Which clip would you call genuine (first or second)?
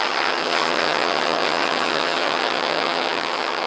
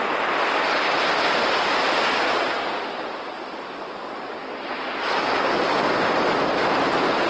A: second